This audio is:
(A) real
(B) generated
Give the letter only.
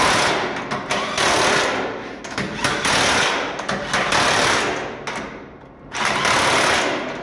A